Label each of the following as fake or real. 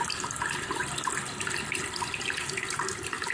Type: real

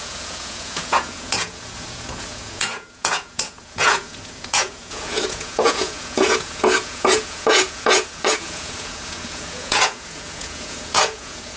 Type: fake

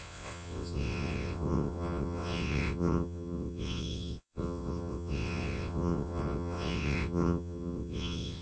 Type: fake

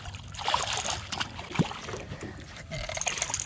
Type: real